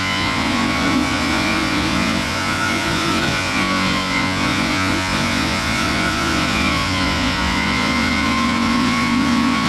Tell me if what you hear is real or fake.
fake